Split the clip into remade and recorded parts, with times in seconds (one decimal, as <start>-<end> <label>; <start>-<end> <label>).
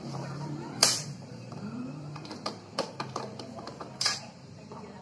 0.0-5.0 remade